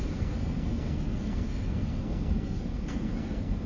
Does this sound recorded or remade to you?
remade